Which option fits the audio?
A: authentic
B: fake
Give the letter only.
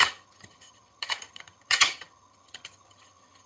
B